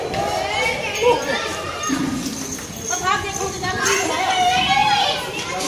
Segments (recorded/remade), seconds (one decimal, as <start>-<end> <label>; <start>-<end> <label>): 0.0-4.8 recorded; 4.8-5.7 remade